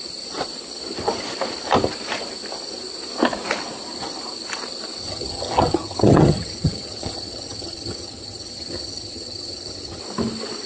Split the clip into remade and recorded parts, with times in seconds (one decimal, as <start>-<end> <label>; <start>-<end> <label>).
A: 0.0-5.0 recorded; 5.0-10.0 remade; 10.0-10.7 recorded